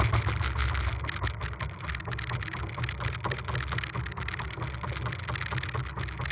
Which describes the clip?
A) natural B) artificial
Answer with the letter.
A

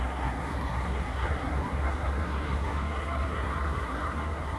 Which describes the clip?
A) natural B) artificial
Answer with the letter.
B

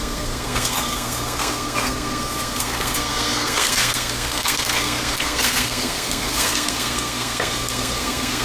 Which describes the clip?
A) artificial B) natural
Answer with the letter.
A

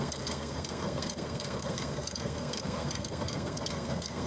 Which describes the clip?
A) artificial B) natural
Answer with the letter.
A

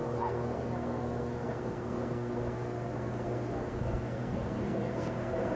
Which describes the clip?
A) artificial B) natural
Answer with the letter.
A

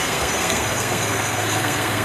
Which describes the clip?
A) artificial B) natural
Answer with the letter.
A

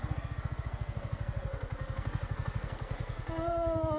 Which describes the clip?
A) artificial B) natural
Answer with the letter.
A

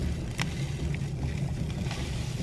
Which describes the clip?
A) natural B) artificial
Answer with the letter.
A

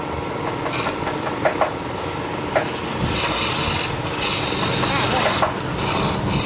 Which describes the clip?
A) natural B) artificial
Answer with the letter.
A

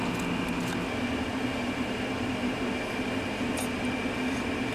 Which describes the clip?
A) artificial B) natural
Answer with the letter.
B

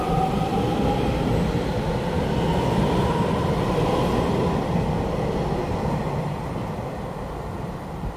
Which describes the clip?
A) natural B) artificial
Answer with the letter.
A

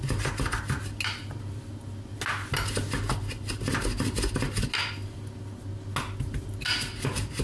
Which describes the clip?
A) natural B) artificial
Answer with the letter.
A